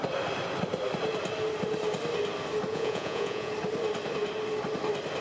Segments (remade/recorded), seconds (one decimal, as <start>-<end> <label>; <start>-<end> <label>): 0.0-2.7 recorded; 2.7-3.5 remade; 3.5-5.2 recorded